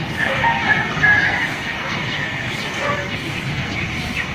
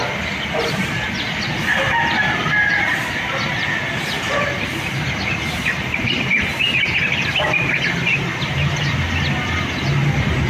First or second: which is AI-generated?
first